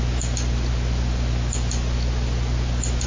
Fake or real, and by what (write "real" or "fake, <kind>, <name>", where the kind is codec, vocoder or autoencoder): real